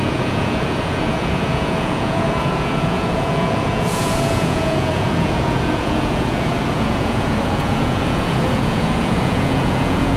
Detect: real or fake fake